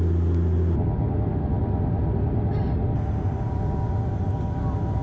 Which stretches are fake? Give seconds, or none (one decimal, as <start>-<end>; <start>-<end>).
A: none